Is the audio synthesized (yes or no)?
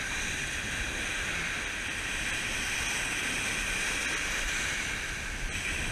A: no